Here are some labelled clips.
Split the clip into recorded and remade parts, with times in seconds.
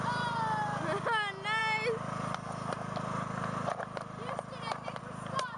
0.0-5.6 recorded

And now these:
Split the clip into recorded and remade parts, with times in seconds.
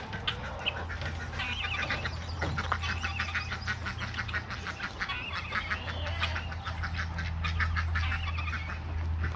0.0-9.4 recorded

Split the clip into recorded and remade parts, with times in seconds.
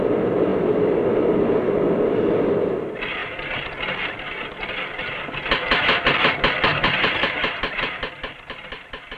0.0-3.2 recorded; 3.2-3.7 remade; 3.7-6.7 recorded; 6.7-8.0 remade; 8.0-9.2 recorded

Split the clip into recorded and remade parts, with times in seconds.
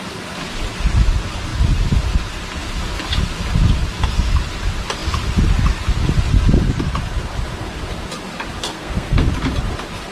0.0-8.6 recorded; 8.6-9.3 remade; 9.3-10.1 recorded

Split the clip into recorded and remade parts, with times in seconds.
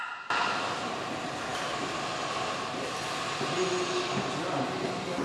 0.0-5.2 recorded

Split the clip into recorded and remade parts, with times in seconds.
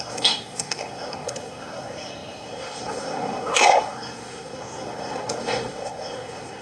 0.0-6.6 remade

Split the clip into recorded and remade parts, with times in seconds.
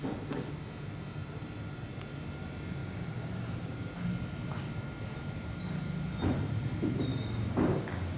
0.0-2.8 recorded; 2.8-3.9 remade; 3.9-7.1 recorded; 7.1-8.2 remade